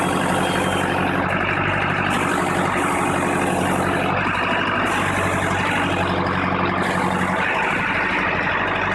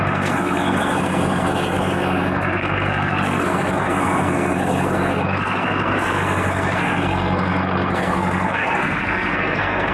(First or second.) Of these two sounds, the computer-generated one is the second